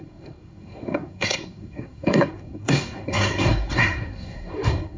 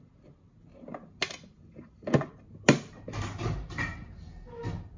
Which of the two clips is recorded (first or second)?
second